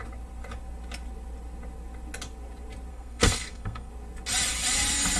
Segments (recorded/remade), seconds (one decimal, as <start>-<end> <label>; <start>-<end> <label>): 0.0-2.9 recorded; 2.9-3.9 remade; 3.9-5.2 recorded